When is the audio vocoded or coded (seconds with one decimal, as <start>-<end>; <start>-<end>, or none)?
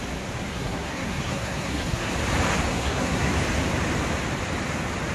0.5-2.1; 2.7-3.3